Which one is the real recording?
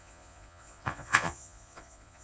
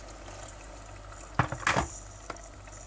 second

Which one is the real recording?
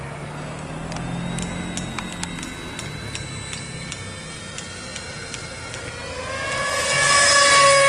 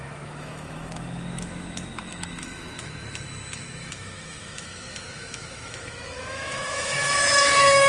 first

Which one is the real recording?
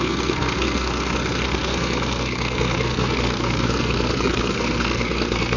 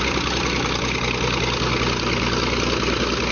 second